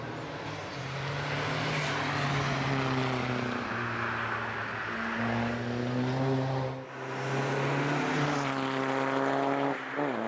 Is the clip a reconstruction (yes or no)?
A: no